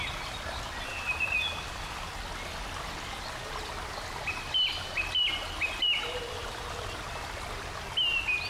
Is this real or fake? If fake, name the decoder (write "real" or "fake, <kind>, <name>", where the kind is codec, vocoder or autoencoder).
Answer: real